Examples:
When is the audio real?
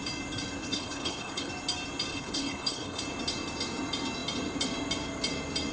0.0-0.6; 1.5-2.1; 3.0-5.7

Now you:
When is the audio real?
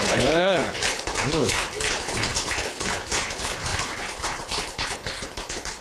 none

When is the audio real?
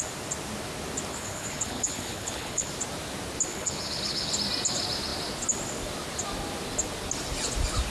0.0-1.1; 2.7-3.5; 4.3-7.9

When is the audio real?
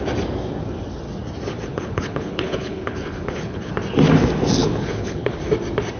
0.0-1.7; 3.7-4.6; 5.4-6.0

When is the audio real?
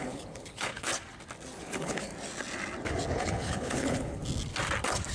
0.9-1.6; 2.1-3.1; 4.2-5.1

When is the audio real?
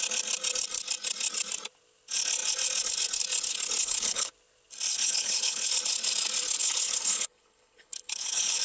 0.0-3.8; 4.3-4.9; 5.7-6.6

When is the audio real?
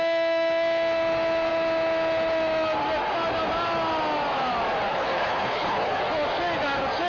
0.0-4.9; 6.0-7.1